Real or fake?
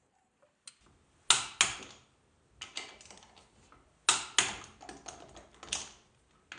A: real